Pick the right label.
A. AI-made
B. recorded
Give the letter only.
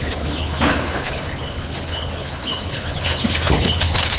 A